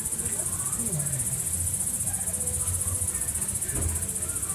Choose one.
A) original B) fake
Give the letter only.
A